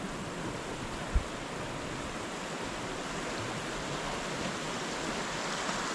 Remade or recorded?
recorded